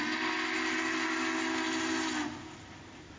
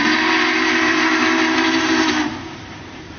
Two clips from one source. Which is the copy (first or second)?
second